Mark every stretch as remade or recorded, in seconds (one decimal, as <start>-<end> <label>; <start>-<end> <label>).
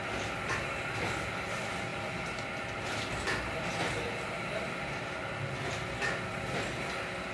0.0-7.3 recorded